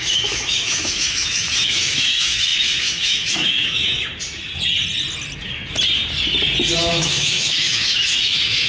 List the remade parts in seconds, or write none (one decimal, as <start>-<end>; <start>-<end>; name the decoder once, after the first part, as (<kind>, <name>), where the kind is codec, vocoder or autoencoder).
0.0-4.1 (autoencoder, DAC-VAE); 6.9-8.7

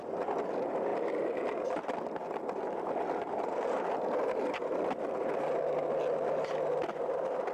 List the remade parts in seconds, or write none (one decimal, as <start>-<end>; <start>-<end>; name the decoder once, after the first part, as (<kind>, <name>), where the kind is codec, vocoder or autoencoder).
0.9-1.5 (vocoder, BigVGAN v2)